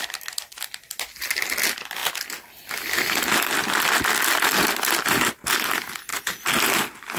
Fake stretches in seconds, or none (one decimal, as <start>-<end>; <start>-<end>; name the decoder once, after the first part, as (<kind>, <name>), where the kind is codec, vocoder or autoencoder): none